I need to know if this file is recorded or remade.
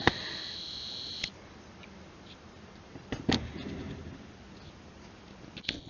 recorded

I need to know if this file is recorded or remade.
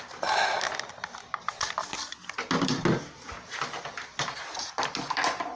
recorded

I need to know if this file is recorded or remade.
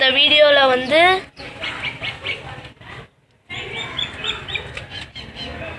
recorded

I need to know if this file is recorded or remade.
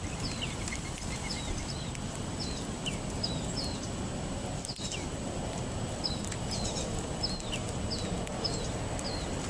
recorded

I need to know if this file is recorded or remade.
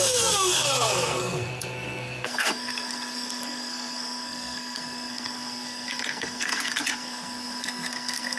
remade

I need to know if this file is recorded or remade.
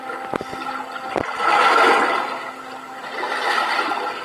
remade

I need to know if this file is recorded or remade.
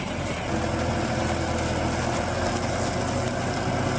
recorded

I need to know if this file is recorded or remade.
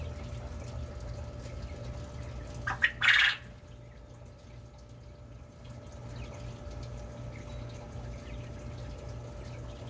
recorded